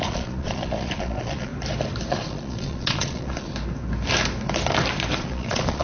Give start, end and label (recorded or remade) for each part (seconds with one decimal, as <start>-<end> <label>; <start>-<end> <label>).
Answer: 0.0-1.5 remade; 1.5-2.1 recorded; 2.1-3.5 remade; 3.5-5.2 recorded; 5.2-5.8 remade